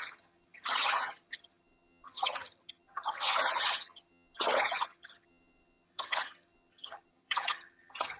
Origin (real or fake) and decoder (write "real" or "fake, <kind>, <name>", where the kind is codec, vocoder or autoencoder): fake, vocoder, HiFi-GAN